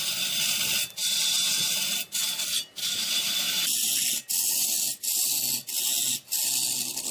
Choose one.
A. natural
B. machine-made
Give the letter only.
A